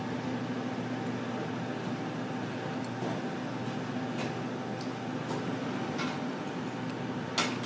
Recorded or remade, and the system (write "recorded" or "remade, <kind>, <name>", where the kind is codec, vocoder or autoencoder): recorded